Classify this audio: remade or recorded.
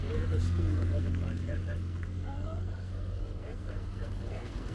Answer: remade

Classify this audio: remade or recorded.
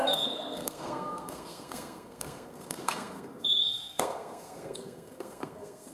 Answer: remade